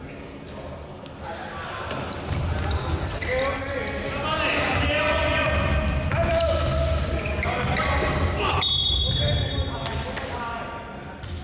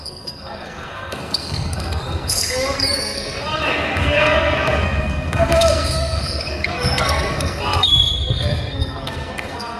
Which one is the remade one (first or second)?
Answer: second